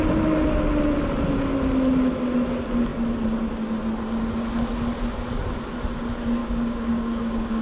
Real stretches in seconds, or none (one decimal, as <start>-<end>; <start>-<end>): 0.0-6.4